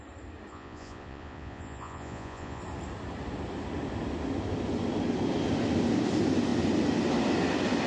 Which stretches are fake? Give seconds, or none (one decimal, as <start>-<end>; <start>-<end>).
0.5-2.6